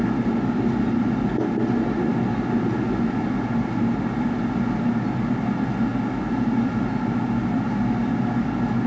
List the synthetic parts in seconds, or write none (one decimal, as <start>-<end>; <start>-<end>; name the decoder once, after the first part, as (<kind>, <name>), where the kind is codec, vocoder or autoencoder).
none